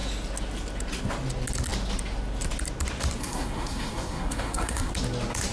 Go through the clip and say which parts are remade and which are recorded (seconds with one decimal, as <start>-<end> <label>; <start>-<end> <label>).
0.0-3.2 recorded; 3.2-4.9 remade; 4.9-5.5 recorded